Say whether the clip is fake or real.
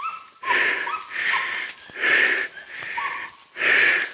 real